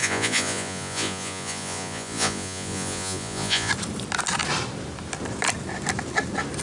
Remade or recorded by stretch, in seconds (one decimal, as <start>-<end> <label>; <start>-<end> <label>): 0.0-3.7 remade; 3.7-6.6 recorded